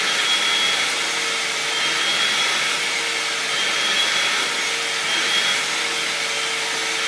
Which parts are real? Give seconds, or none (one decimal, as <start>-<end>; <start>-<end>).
0.0-7.1